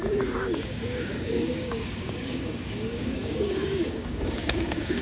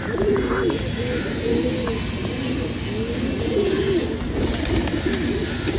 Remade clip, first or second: first